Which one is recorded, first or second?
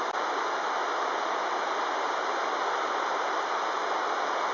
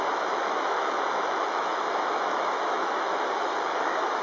first